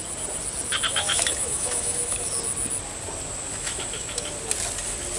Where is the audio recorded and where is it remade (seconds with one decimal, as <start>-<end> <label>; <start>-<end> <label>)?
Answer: 0.0-0.9 recorded; 0.9-2.3 remade; 2.3-3.5 recorded; 3.5-4.3 remade; 4.3-5.2 recorded